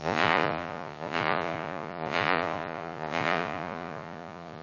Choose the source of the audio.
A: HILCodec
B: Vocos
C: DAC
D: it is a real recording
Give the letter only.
B